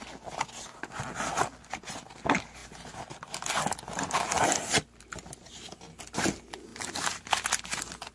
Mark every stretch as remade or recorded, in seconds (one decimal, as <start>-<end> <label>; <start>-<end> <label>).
0.0-8.1 recorded